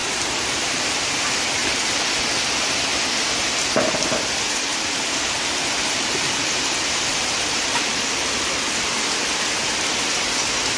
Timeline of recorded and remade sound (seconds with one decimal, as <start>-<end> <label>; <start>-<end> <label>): 0.0-1.2 remade; 1.2-1.6 recorded; 1.6-2.2 remade; 2.2-4.7 recorded; 4.7-8.0 remade; 8.0-10.8 recorded